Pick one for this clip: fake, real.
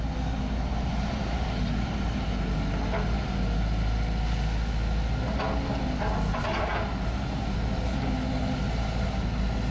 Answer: real